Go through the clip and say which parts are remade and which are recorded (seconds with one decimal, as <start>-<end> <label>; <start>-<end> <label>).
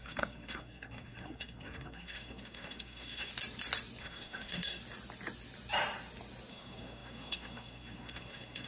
0.0-3.3 remade; 3.3-4.0 recorded; 4.0-4.8 remade; 4.8-6.5 recorded; 6.5-8.7 remade